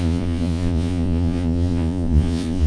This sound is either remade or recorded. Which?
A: remade